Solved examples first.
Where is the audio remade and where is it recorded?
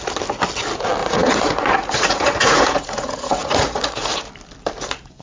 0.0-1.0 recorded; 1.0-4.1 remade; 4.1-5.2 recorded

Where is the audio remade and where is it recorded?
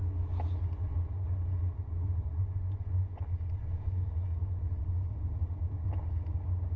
0.0-2.4 recorded; 2.4-3.2 remade; 3.2-6.8 recorded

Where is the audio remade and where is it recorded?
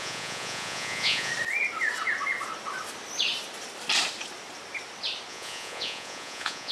0.0-1.3 remade; 1.3-5.3 recorded; 5.3-6.7 remade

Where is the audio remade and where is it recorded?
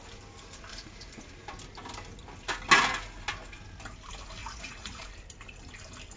0.0-0.7 recorded; 0.7-1.2 remade; 1.2-4.4 recorded; 4.4-5.0 remade; 5.0-6.2 recorded